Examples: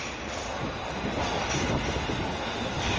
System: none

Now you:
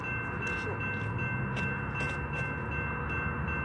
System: none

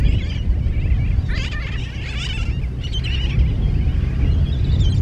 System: none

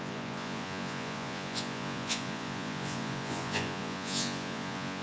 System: vocoder, Vocos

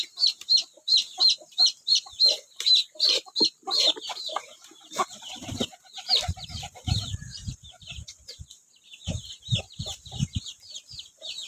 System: vocoder, BigVGAN v2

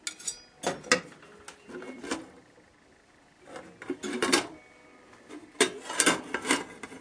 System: none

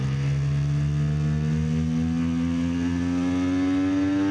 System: none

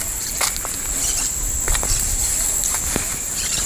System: vocoder, BigVGAN v2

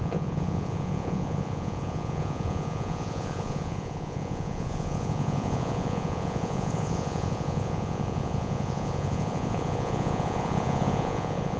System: vocoder, Vocos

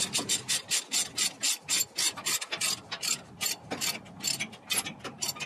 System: none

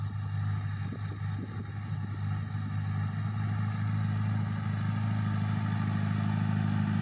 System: none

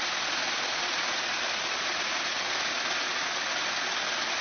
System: none